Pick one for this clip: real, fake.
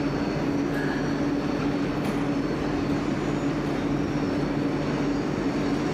real